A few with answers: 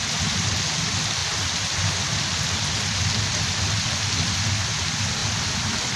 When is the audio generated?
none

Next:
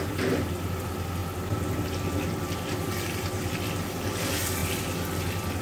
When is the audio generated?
none

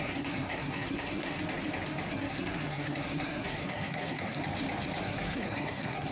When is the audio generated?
0.0-1.4 (codec, SNAC); 2.1-4.4; 5.0-6.1

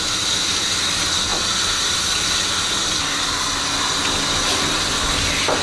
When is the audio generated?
none

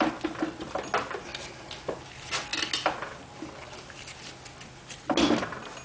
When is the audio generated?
none

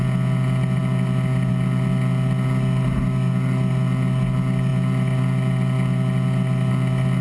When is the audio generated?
none

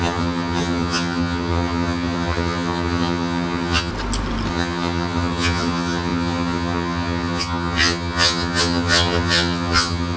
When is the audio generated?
0.0-3.9 (vocoder, HiFi-GAN); 4.5-10.2

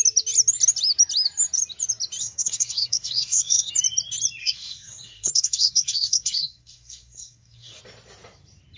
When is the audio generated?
2.2-3.7 (codec, SNAC); 4.4-7.8